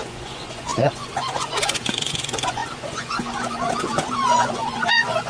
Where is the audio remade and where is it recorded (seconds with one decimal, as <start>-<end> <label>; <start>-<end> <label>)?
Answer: 0.0-5.3 remade